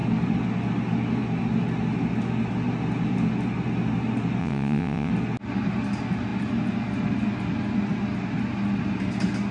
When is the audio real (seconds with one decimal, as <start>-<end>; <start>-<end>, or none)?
0.0-4.4; 5.1-9.5